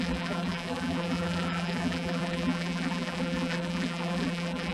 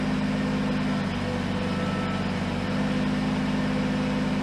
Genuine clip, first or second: second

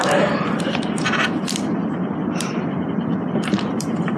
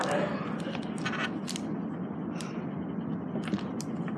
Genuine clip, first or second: second